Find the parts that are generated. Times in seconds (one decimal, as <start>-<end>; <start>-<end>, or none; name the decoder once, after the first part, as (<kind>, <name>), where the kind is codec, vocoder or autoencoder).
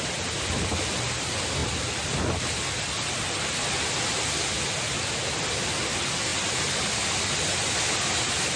none